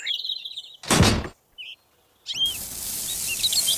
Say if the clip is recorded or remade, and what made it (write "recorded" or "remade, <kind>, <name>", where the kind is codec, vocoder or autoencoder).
recorded